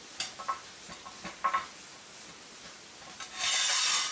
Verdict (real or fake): real